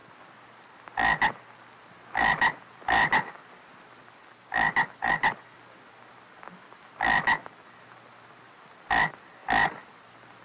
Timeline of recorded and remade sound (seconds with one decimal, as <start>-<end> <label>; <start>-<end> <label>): 0.0-9.4 recorded; 9.4-10.4 remade